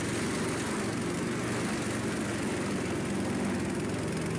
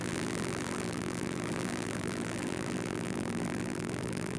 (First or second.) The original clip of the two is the first